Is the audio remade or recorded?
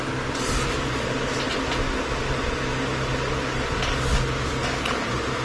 recorded